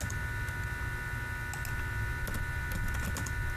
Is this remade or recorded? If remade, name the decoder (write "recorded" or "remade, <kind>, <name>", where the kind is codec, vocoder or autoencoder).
recorded